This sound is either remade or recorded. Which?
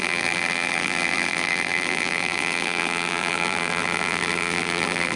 remade